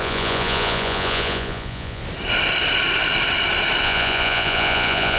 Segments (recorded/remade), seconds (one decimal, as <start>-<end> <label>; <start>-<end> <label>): 0.0-2.0 remade; 2.0-3.8 recorded; 3.8-5.2 remade